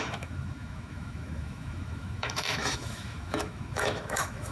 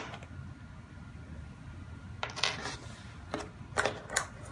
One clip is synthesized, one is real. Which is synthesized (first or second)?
first